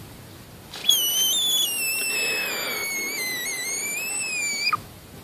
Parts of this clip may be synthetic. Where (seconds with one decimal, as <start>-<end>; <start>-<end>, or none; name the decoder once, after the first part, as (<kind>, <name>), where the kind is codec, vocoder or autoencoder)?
0.0-0.8 (vocoder, BigVGAN v2); 2.1-2.8; 3.5-5.2